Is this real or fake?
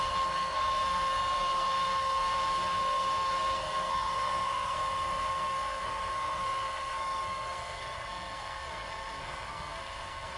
fake